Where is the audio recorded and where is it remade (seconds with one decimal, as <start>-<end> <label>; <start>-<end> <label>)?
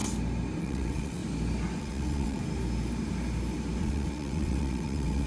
0.0-0.6 recorded; 0.6-1.2 remade; 1.2-1.8 recorded; 1.8-2.4 remade; 2.4-3.8 recorded; 3.8-5.3 remade